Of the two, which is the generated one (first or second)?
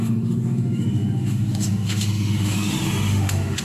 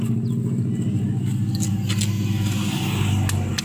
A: first